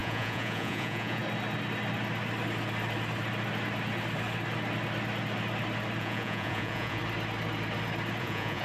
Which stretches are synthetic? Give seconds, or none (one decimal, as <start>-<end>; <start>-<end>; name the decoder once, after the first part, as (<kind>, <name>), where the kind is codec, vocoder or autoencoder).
0.0-1.2 (vocoder, Vocos); 6.0-7.0; 8.2-8.6